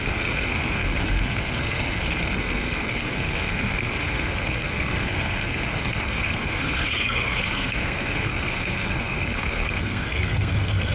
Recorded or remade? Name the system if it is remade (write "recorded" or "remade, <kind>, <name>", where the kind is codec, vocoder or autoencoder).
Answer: remade, codec, SNAC